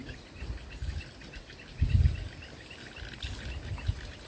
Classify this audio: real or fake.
real